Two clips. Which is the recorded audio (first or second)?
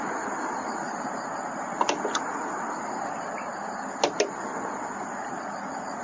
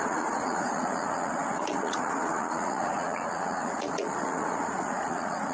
first